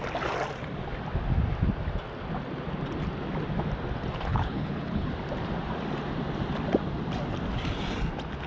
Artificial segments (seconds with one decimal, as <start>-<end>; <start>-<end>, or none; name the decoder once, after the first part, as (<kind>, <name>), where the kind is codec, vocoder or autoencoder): 4.3-5.1 (codec, HILCodec)